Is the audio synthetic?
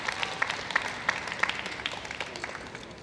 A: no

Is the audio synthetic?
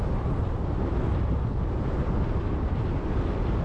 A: no